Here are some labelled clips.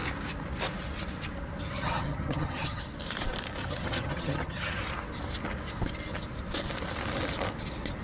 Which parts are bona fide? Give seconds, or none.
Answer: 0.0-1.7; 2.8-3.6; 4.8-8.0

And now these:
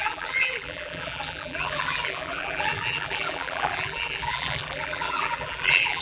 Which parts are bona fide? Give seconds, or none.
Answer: none